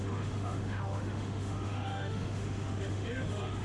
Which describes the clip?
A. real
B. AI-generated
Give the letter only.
B